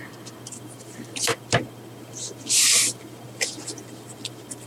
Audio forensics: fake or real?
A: real